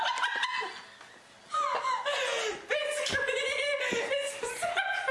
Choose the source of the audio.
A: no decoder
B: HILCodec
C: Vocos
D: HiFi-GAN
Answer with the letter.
A